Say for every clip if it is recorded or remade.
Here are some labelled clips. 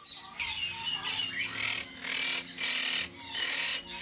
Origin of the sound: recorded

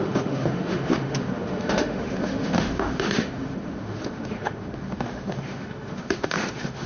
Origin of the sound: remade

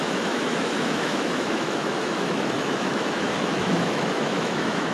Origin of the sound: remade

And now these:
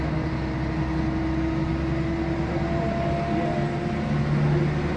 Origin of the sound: recorded